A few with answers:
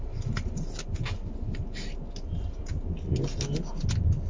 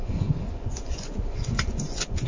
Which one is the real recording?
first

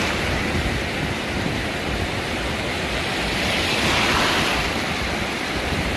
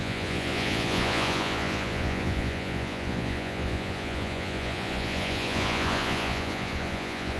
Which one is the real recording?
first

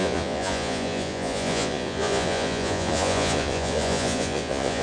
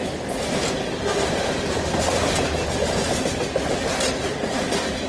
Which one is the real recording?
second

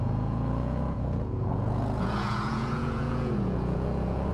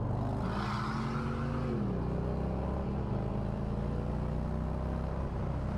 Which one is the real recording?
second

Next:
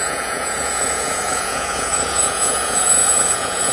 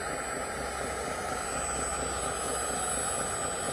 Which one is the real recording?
second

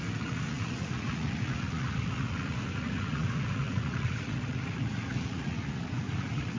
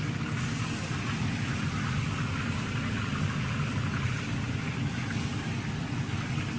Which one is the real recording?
second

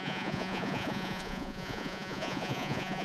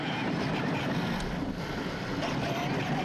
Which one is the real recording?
second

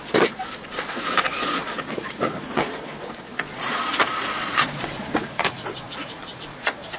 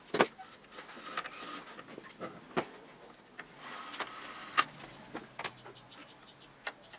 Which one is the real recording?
second